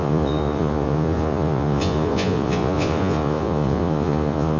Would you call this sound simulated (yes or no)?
yes